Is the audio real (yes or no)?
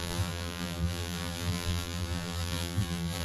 no